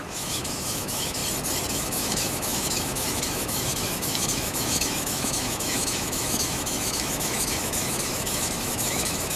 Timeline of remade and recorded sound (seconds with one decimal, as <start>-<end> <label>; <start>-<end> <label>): 0.0-1.2 remade; 1.2-1.7 recorded; 1.7-9.4 remade